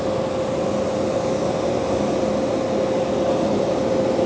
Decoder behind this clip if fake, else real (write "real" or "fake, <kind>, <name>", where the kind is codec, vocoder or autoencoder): real